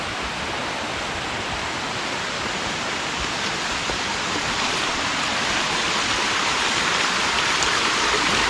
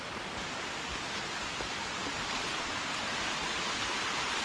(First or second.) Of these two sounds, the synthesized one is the first